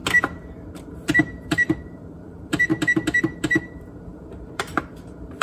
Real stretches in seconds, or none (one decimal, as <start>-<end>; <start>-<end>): 0.0-0.8; 2.7-3.6